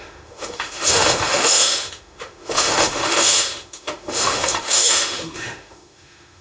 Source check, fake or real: fake